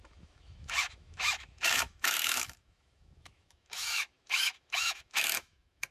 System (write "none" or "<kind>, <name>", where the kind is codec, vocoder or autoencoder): autoencoder, DAC-VAE